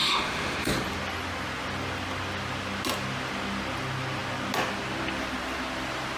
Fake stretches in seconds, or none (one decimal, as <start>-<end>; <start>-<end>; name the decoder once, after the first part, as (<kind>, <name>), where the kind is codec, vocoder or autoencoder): 0.0-0.7 (autoencoder, DAC-VAE)